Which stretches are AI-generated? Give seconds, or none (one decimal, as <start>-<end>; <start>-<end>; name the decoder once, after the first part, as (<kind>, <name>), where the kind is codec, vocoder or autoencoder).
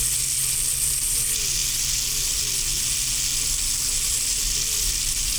none